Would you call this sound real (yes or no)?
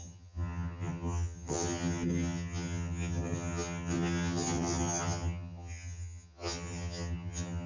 no